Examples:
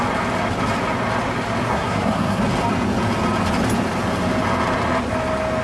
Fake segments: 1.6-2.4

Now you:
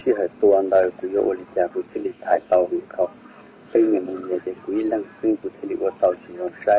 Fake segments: 2.0-2.5; 3.2-4.4

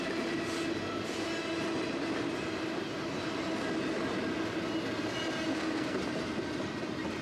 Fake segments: 5.5-6.0

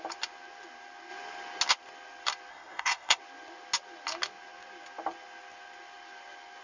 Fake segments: 2.5-3.2

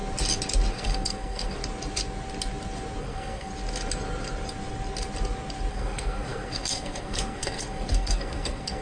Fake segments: 0.7-1.6; 3.0-3.5; 5.7-8.8

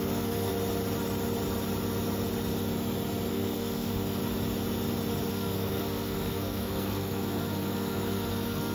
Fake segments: 0.0-0.5; 3.3-4.2; 5.3-8.7

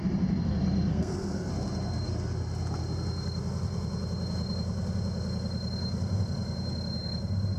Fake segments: 0.9-1.5

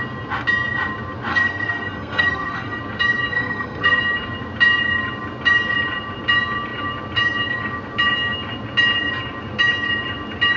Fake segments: 1.3-2.8; 3.3-4.0